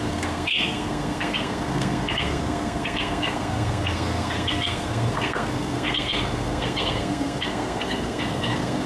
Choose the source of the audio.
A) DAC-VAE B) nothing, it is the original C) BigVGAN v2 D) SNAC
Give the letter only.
D